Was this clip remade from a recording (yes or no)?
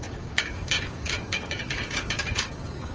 yes